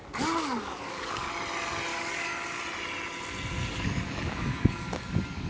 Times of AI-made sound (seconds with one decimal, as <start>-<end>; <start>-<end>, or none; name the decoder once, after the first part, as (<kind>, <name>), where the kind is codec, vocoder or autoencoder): 0.0-1.3 (codec, DAC); 1.9-2.6; 3.5-5.5